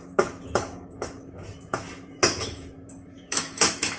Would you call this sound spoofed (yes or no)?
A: yes